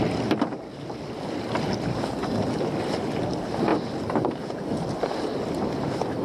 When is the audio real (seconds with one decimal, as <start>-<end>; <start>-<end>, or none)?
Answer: 0.0-6.2